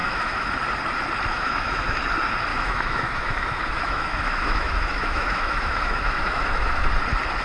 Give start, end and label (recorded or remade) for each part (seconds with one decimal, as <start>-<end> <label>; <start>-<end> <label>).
0.0-0.5 remade; 0.5-1.3 recorded; 1.3-2.0 remade; 2.0-2.5 recorded; 2.5-6.9 remade; 6.9-7.4 recorded